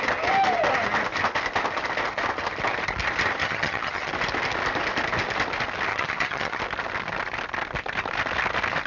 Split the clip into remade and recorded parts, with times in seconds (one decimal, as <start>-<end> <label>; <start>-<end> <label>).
0.0-3.4 recorded; 3.4-4.1 remade; 4.1-5.9 recorded; 5.9-6.6 remade; 6.6-8.9 recorded

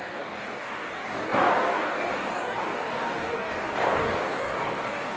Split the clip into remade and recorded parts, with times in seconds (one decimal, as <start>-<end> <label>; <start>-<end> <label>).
0.0-5.2 remade

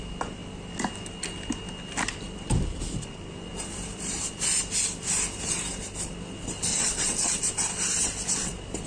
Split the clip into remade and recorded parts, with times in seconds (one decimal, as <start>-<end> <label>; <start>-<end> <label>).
0.0-6.7 recorded; 6.7-7.4 remade; 7.4-8.9 recorded

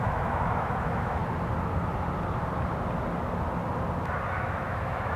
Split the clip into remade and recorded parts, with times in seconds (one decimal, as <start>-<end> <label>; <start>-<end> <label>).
0.0-1.2 remade; 1.2-4.3 recorded; 4.3-5.2 remade

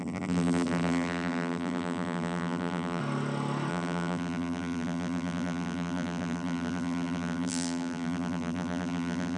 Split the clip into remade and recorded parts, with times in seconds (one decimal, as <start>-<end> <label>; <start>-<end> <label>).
0.0-3.0 remade; 3.0-3.7 recorded; 3.7-9.4 remade

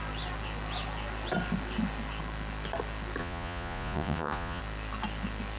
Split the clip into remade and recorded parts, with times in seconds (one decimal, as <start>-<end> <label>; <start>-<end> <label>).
0.0-3.2 recorded; 3.2-4.6 remade; 4.6-5.6 recorded

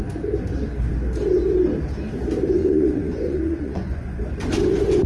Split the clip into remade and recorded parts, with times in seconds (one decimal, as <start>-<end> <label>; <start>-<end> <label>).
0.0-2.6 recorded; 2.6-4.4 remade; 4.4-5.1 recorded